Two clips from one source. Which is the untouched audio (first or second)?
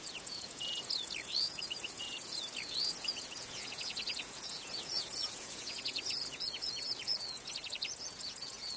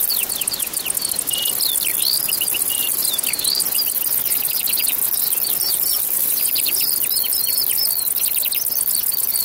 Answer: second